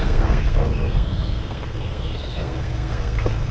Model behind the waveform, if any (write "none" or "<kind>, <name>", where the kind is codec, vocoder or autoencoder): codec, SNAC